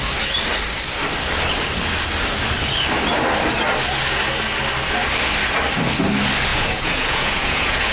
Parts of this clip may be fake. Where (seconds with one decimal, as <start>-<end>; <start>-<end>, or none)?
6.5-7.9